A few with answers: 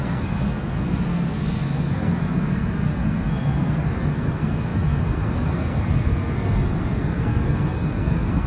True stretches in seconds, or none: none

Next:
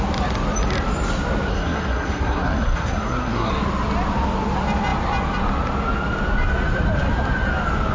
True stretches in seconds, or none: 0.0-1.5; 3.5-7.9

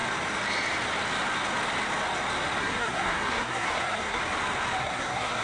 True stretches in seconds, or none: 0.0-2.6; 4.2-4.8

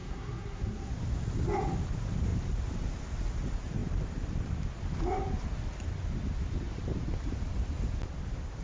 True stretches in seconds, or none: 0.9-8.6

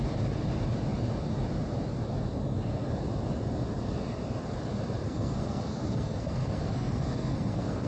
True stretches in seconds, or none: 0.0-5.0

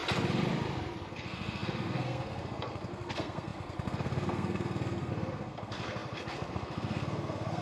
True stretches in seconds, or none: 0.0-1.1